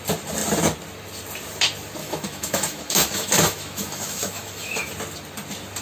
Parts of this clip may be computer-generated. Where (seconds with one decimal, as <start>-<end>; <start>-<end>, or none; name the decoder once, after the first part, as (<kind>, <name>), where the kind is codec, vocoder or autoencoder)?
2.0-4.9 (autoencoder, DAC-VAE)